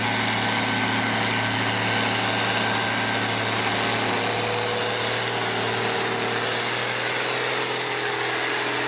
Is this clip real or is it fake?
real